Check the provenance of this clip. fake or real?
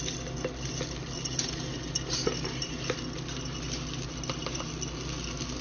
real